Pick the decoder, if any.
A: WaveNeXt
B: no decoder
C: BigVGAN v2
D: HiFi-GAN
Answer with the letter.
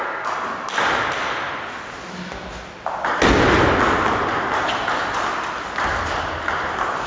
B